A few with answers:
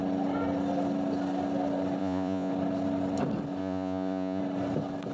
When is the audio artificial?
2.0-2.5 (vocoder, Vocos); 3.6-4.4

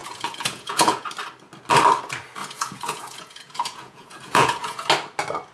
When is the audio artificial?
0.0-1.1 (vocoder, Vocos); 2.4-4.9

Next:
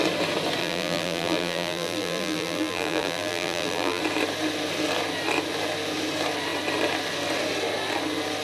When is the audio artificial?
0.6-4.0 (vocoder, BigVGAN v2)

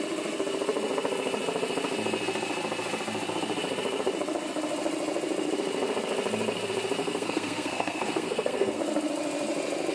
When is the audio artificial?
7.0-8.8 (codec, SNAC)

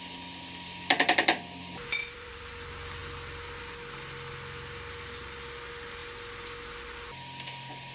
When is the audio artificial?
1.8-2.5 (vocoder, BigVGAN v2)

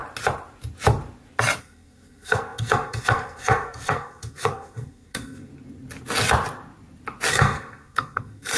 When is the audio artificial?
1.6-5.5 (codec, SNAC); 7.3-8.6